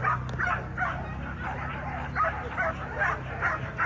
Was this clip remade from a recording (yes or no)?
no